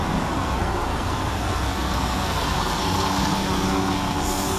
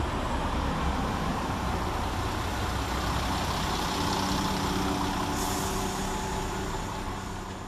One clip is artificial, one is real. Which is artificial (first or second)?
first